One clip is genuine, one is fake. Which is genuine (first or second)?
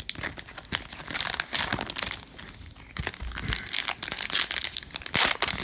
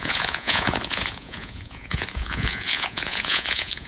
first